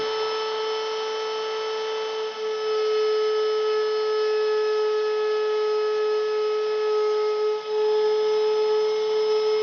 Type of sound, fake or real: real